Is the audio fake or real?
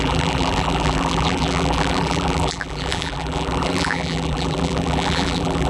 fake